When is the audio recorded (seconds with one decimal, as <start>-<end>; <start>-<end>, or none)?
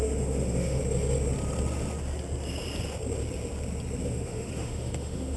0.8-4.0